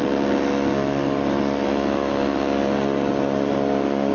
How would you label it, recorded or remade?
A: recorded